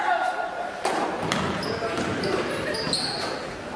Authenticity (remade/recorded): remade